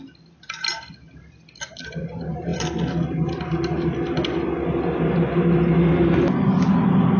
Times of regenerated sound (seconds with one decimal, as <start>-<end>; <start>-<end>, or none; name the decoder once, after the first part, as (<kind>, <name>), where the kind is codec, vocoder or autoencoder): none